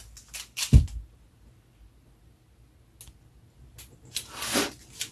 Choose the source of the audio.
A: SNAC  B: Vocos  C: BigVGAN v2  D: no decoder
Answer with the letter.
D